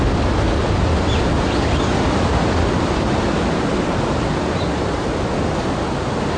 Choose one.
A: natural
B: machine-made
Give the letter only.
A